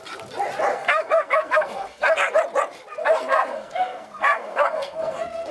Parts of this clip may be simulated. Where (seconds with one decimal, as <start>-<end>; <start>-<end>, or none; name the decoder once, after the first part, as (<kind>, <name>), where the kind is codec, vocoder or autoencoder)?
0.7-2.4 (codec, SNAC); 3.0-5.5